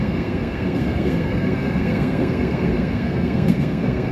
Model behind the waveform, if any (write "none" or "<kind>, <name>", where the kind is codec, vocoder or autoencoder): codec, SNAC